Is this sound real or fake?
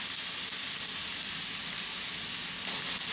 real